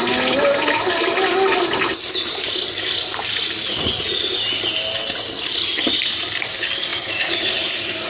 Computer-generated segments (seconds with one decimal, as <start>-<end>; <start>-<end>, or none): 3.7-4.2; 6.9-8.1